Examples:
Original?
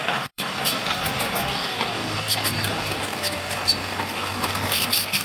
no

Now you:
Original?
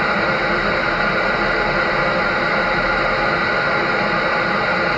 yes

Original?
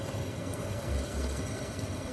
no